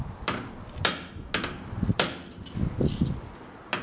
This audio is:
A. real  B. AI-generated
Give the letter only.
A